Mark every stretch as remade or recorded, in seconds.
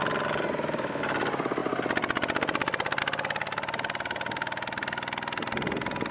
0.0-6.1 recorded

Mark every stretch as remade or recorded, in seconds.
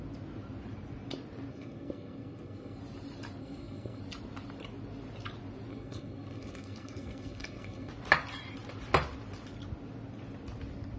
0.0-1.5 recorded; 1.5-2.8 remade; 2.8-3.4 recorded; 3.4-4.0 remade; 4.0-5.7 recorded; 5.7-7.9 remade; 7.9-11.0 recorded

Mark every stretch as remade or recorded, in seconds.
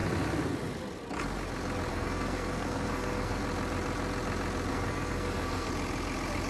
0.0-1.9 recorded; 1.9-3.4 remade; 3.4-4.7 recorded; 4.7-5.7 remade; 5.7-6.5 recorded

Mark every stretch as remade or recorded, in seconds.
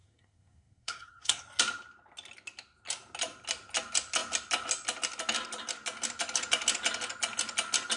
0.0-1.4 remade; 1.4-8.0 recorded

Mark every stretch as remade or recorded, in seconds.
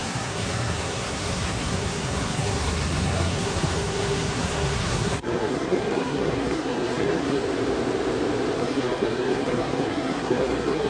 0.0-7.4 remade; 7.4-8.6 recorded; 8.6-10.9 remade